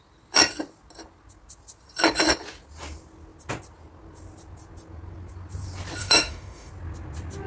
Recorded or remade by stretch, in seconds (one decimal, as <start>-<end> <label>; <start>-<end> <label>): 0.0-6.0 recorded; 6.0-6.7 remade; 6.7-7.5 recorded